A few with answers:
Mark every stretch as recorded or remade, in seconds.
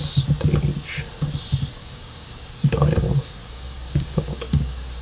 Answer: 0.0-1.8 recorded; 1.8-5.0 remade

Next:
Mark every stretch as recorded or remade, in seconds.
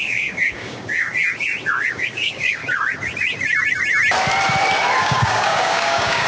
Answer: 0.0-1.1 remade; 1.1-1.9 recorded; 1.9-2.6 remade; 2.6-5.0 recorded; 5.0-6.3 remade